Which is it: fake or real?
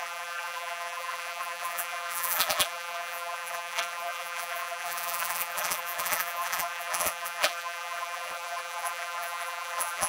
fake